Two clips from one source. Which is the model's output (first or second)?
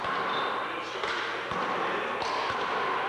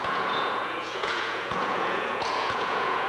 second